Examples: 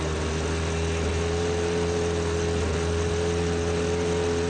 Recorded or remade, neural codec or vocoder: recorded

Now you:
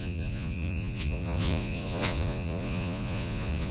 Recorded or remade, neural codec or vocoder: remade, vocoder, Vocos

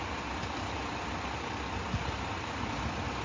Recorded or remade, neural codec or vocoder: recorded